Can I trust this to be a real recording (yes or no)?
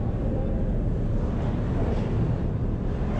yes